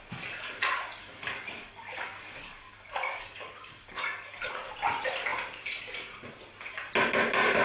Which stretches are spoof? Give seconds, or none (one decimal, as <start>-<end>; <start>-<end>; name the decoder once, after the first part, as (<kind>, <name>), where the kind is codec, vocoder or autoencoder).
1.0-4.7 (codec, DAC)